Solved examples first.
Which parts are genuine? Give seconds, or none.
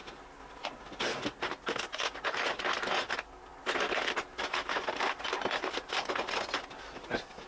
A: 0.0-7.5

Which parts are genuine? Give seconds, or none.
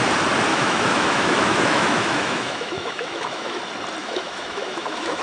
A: 0.0-0.5; 3.6-4.0